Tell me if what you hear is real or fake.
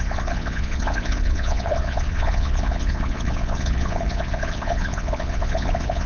fake